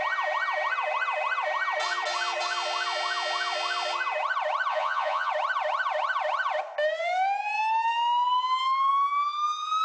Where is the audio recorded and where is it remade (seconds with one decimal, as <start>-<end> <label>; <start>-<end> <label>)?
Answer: 0.0-4.7 recorded; 4.7-5.3 remade; 5.3-9.8 recorded